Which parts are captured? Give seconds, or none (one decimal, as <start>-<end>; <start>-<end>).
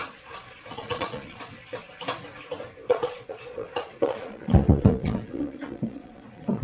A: 1.5-2.8